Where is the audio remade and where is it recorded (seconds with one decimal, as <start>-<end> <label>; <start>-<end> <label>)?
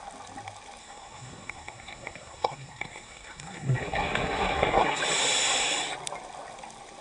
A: 0.0-0.8 recorded; 0.8-5.0 remade; 5.0-7.0 recorded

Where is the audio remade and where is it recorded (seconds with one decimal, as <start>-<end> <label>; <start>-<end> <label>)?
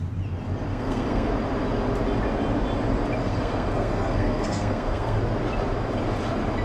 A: 0.0-0.7 recorded; 0.7-1.3 remade; 1.3-3.2 recorded; 3.2-5.2 remade; 5.2-6.6 recorded